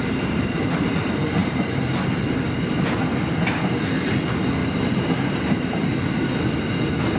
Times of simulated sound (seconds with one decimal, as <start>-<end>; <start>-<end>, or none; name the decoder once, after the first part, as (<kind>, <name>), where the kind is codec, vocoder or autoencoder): 1.4-2.0 (vocoder, BigVGAN v2); 4.6-5.9